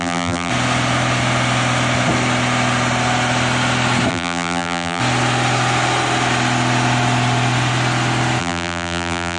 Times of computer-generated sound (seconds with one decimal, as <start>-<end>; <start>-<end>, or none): 0.0-0.5; 4.1-5.0; 8.4-9.4